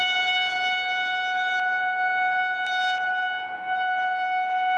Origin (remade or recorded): recorded